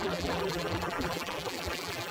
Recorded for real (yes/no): no